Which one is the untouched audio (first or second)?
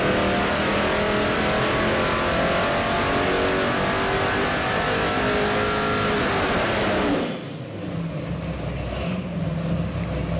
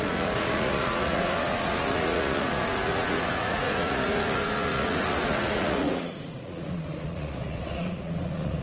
first